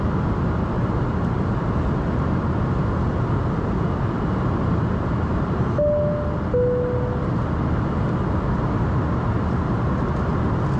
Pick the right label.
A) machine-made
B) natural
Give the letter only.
B